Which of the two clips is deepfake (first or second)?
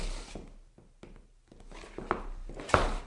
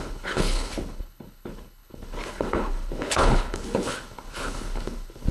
second